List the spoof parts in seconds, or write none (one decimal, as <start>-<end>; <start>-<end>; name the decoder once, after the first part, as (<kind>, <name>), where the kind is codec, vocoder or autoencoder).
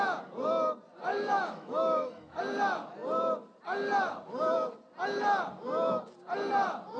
1.1-2.4 (autoencoder, DAC-VAE)